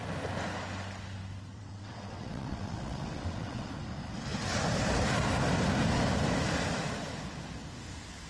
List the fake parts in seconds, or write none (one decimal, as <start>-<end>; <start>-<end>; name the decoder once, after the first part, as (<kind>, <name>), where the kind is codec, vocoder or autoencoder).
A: 1.5-3.7 (vocoder, WaveNeXt)